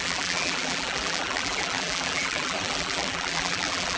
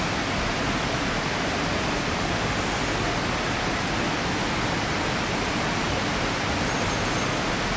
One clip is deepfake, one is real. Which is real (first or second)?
second